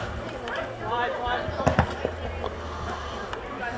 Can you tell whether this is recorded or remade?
recorded